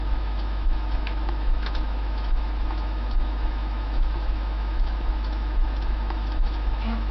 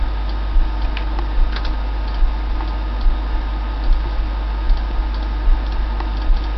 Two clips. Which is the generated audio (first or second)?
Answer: first